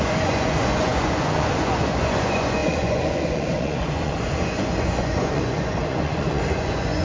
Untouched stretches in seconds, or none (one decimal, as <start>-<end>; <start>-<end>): none